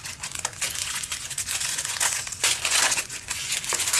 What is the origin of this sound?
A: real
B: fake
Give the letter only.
B